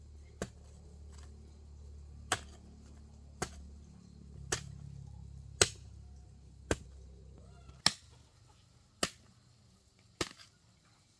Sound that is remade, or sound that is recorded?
recorded